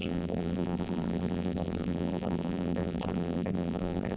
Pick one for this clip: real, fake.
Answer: fake